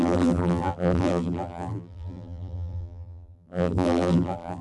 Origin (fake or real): fake